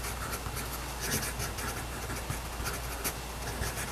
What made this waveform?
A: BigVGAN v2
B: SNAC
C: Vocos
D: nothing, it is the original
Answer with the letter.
D